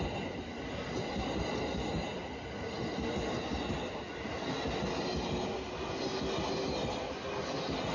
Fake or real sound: real